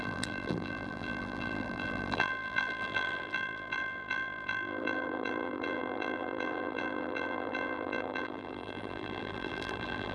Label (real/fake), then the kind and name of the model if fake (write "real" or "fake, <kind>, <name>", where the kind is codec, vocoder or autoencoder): fake, vocoder, BigVGAN v2